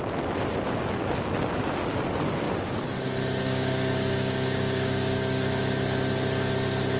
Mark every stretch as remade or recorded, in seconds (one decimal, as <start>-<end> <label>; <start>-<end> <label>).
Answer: 0.0-3.4 recorded; 3.4-5.6 remade; 5.6-7.0 recorded